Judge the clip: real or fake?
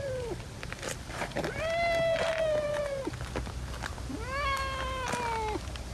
real